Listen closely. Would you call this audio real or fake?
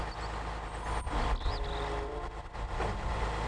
real